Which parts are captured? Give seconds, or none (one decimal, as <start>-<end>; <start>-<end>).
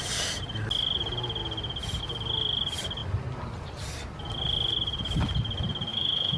0.0-5.9